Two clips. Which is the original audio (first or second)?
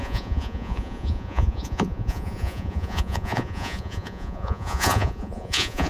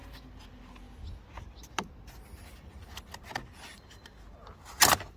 second